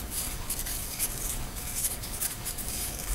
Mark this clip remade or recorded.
remade